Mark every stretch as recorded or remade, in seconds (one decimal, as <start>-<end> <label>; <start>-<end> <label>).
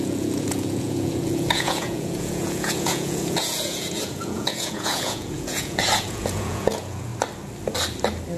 0.0-7.1 remade; 7.1-8.4 recorded